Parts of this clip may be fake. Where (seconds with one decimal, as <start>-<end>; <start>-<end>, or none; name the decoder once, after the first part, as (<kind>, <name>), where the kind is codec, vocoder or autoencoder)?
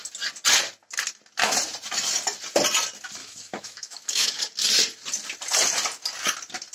3.2-4.4 (autoencoder, DAC-VAE)